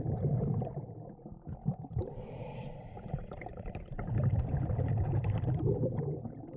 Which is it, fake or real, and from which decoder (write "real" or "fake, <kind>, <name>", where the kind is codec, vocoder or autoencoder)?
fake, vocoder, BigVGAN v2